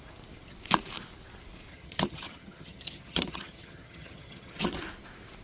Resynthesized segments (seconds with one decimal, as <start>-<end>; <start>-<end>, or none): 1.7-4.8